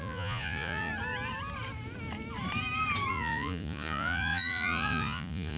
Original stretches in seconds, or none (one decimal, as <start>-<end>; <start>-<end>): 0.9-3.1